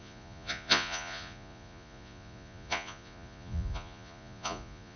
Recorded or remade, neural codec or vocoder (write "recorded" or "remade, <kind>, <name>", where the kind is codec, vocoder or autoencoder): remade, vocoder, Vocos